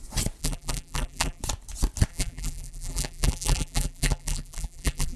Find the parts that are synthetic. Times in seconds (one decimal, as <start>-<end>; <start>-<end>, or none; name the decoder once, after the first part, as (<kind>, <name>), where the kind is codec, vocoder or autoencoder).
0.4-1.4 (vocoder, BigVGAN v2); 2.1-5.2